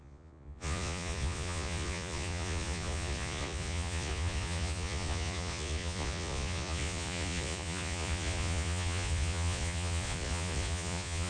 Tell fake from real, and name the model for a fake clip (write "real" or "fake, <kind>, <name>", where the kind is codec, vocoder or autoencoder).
fake, vocoder, Vocos